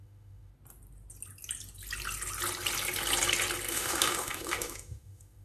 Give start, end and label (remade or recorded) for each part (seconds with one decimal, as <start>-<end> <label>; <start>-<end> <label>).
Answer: 0.0-0.5 remade; 0.5-3.7 recorded; 3.7-5.4 remade